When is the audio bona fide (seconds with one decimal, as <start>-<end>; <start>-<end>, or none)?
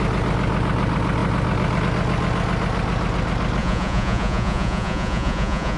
0.0-3.6